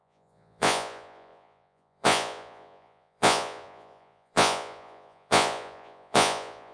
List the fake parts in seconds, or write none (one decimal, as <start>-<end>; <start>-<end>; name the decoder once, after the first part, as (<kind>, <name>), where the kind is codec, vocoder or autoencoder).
0.0-6.7 (vocoder, Vocos)